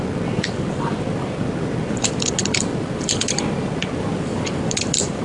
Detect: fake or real real